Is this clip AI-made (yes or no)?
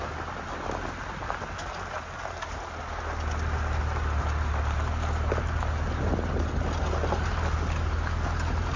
no